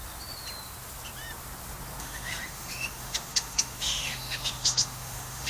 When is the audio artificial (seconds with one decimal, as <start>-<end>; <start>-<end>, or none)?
2.0-5.5

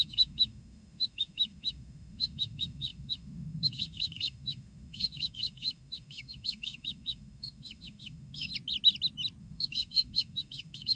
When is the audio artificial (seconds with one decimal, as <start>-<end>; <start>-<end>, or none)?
0.0-8.5; 9.4-11.0

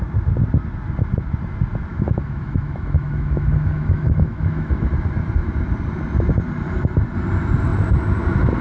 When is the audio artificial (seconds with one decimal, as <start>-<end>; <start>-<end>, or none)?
1.9-4.9

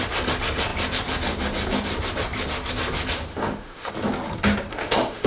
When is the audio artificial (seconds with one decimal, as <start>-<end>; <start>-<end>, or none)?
3.3-3.9; 4.7-5.3

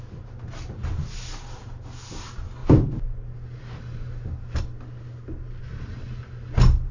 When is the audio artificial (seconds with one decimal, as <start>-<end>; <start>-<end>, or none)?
none

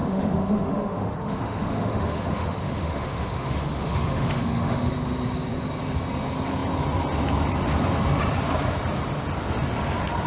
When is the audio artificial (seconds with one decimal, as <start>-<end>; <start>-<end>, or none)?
0.0-4.9

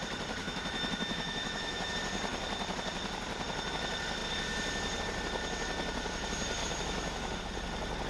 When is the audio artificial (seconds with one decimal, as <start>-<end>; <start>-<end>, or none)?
0.4-1.9; 6.6-7.4